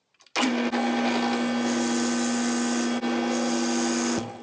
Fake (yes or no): no